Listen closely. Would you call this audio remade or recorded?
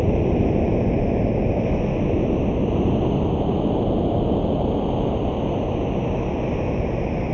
recorded